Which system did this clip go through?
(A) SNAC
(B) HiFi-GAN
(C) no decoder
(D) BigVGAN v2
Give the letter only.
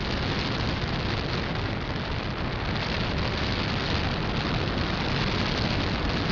C